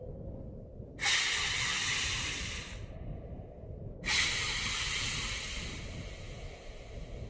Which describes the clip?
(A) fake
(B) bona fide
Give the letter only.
B